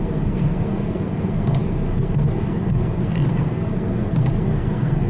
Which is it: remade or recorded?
remade